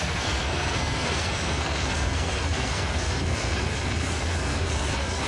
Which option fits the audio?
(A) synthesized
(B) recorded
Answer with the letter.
A